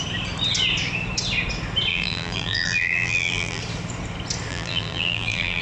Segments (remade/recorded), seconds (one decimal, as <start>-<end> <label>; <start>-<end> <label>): 0.0-1.9 recorded; 1.9-3.6 remade; 3.6-4.5 recorded; 4.5-5.6 remade